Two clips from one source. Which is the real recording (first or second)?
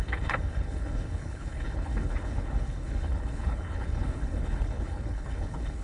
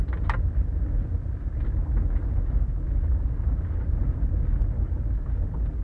second